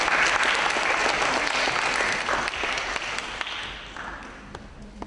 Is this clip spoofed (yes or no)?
no